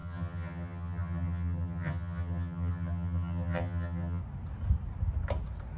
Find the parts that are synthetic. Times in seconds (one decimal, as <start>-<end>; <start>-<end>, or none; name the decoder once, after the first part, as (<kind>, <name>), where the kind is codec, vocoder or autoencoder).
0.0-4.2 (vocoder, HiFi-GAN)